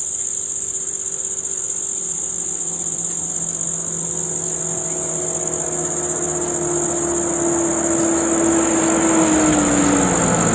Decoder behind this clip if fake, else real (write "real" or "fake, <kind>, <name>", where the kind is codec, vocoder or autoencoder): real